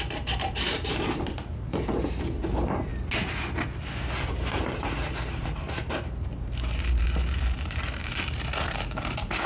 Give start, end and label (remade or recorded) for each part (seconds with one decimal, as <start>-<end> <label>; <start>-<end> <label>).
0.0-2.9 remade; 2.9-4.0 recorded; 4.0-9.5 remade